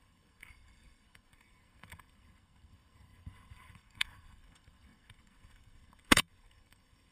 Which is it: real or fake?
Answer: fake